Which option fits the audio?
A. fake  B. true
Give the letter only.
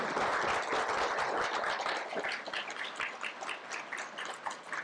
B